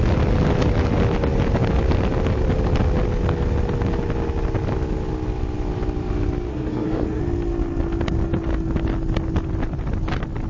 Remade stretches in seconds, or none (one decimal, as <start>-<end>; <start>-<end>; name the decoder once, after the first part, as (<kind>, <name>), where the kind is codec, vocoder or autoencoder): 6.5-7.2 (codec, SNAC)